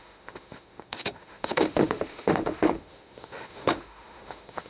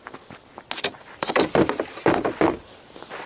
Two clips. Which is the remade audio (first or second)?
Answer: first